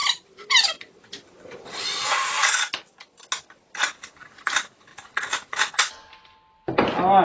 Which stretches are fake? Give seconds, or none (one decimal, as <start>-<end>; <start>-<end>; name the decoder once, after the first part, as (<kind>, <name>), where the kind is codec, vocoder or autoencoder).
2.0-2.6 (vocoder, Vocos); 4.9-5.9